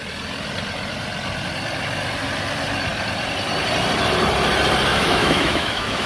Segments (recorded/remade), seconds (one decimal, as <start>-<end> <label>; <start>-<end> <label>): 0.0-4.9 recorded; 4.9-6.1 remade

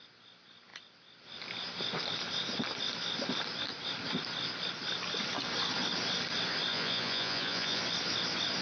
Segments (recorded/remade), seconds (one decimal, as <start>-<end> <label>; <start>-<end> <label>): 0.0-6.7 recorded; 6.7-7.8 remade; 7.8-8.6 recorded

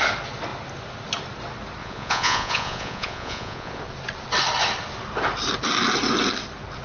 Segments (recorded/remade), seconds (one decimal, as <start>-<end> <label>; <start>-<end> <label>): 0.0-1.8 recorded; 1.8-3.8 remade; 3.8-6.8 recorded

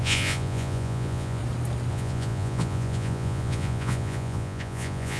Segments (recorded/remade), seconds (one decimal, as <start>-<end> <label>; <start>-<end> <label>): 0.0-1.4 remade; 1.4-1.9 recorded; 1.9-5.2 remade

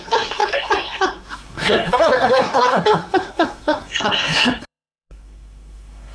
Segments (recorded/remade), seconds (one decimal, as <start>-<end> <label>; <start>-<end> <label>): 0.0-6.1 remade

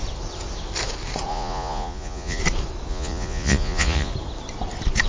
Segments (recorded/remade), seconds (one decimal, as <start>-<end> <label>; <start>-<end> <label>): 0.0-1.3 recorded; 1.3-2.4 remade; 2.4-2.9 recorded; 2.9-4.1 remade; 4.1-5.1 recorded

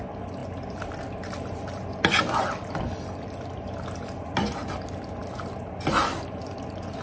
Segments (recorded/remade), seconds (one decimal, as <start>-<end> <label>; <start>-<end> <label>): 0.0-7.0 recorded

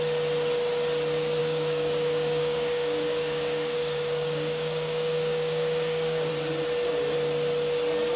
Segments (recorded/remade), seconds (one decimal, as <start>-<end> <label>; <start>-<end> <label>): 0.0-1.4 recorded; 1.4-6.3 remade; 6.3-8.2 recorded